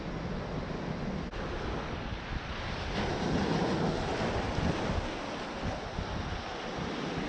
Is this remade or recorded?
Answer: recorded